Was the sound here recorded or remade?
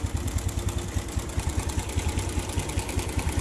recorded